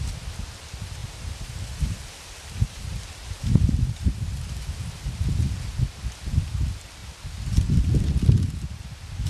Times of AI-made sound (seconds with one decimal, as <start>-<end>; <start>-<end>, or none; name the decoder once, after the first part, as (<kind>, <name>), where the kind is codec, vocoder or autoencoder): 1.0-3.6 (vocoder, BigVGAN v2)